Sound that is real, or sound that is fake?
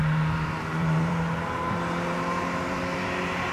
fake